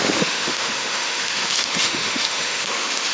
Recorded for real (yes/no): no